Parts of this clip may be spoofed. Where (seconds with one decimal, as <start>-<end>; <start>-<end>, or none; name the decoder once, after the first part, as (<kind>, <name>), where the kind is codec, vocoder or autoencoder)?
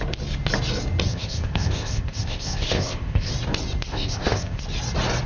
1.1-3.3 (codec, ZipCodec); 3.9-4.6